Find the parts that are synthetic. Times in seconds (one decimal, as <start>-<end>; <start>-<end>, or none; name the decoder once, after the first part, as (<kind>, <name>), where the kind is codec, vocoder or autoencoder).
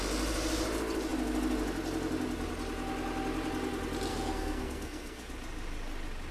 4.1-5.3 (codec, SNAC)